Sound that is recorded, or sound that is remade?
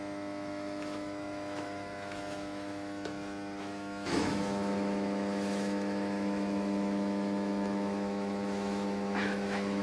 remade